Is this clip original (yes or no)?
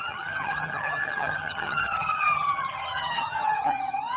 no